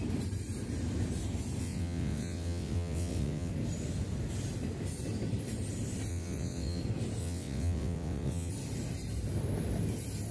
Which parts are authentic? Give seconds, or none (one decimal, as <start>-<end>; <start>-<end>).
0.0-1.6; 3.5-6.1; 6.8-7.2; 8.5-10.3